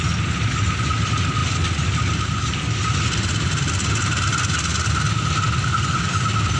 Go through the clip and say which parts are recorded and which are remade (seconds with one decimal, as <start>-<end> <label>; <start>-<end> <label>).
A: 0.0-6.6 recorded